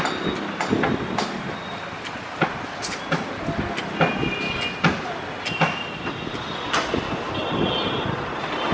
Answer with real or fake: real